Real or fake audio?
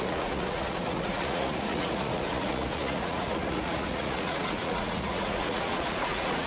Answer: fake